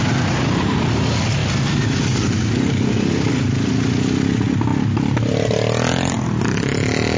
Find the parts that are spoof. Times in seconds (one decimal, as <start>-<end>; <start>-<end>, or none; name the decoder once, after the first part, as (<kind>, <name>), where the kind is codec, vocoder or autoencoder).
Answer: none